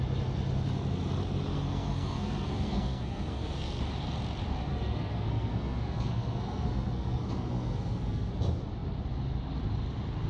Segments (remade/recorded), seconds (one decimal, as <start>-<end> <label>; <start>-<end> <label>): 0.0-1.5 recorded; 1.5-3.8 remade; 3.8-4.7 recorded; 4.7-8.3 remade; 8.3-10.3 recorded